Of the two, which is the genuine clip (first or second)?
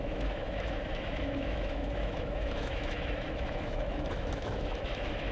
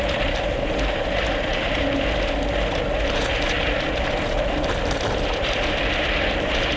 second